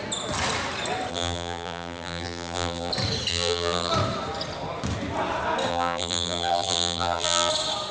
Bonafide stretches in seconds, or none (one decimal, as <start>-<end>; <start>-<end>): 0.0-1.1; 2.9-3.3; 3.9-5.7; 7.5-7.9